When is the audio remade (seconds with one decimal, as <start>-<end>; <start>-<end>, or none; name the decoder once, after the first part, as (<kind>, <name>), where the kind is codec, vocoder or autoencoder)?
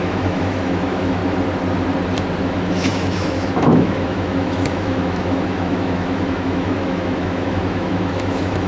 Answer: 0.0-1.2 (autoencoder, DAC-VAE); 2.4-8.7